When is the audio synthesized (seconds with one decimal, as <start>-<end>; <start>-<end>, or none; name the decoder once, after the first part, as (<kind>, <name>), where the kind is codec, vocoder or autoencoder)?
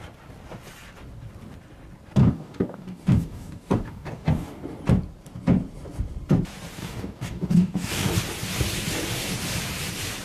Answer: 2.2-4.6 (codec, DAC); 6.8-8.1